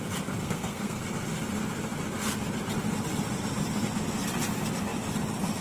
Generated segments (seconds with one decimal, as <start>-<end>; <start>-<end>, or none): 0.4-1.0